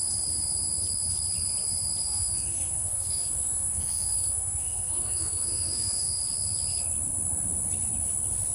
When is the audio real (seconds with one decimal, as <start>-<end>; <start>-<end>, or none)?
0.0-2.0; 6.2-8.5

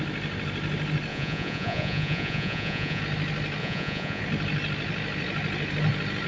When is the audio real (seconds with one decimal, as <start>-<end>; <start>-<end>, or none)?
0.0-1.1; 3.0-3.6; 4.2-6.3

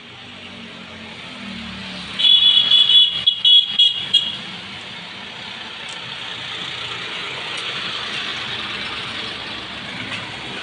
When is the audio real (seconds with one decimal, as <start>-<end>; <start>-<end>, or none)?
0.0-7.2; 7.8-10.6

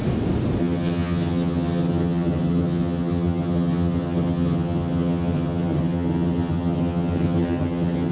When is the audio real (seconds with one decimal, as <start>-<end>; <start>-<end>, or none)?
0.0-0.6